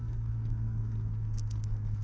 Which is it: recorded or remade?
remade